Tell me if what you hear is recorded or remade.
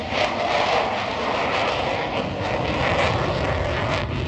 recorded